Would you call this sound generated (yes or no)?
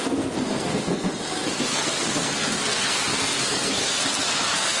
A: yes